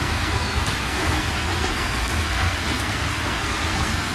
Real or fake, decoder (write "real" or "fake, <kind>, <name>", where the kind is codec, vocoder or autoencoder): fake, codec, SNAC